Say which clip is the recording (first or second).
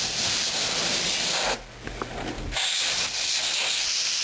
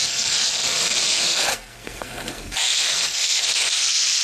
first